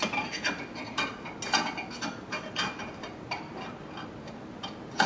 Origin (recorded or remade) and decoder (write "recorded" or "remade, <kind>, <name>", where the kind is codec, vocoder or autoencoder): recorded